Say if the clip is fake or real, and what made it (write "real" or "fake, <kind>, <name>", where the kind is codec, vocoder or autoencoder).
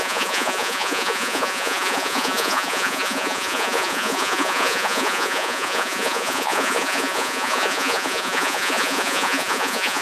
fake, vocoder, Vocos